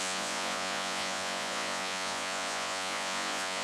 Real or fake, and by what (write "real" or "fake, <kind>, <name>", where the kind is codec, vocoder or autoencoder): fake, vocoder, Vocos